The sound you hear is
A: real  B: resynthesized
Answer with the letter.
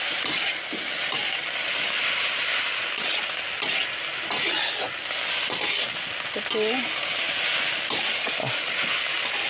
A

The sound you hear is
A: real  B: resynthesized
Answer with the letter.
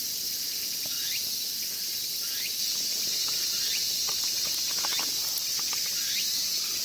A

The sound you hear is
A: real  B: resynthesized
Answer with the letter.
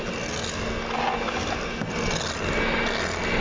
A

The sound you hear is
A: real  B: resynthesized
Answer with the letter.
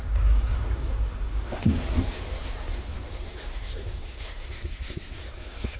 B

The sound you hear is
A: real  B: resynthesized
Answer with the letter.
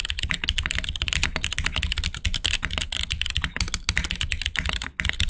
A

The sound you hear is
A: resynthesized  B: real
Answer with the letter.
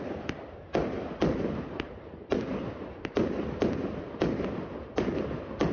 B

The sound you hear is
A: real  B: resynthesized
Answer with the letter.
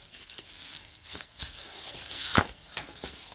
B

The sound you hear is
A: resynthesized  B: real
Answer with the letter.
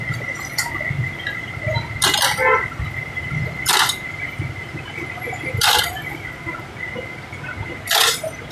B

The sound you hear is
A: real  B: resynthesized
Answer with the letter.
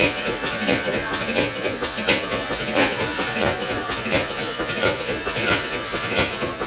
B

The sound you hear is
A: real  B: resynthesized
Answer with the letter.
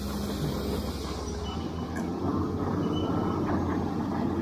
A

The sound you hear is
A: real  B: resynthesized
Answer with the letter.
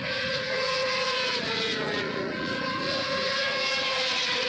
B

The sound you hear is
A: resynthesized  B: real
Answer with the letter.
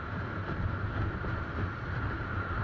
B